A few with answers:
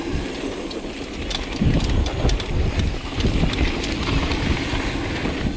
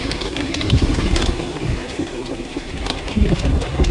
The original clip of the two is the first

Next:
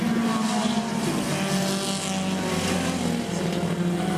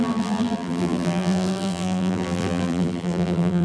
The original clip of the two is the first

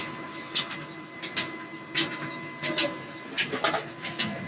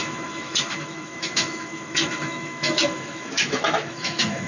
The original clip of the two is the first